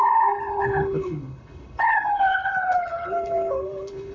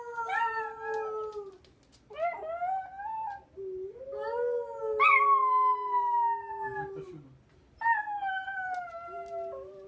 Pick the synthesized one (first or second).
first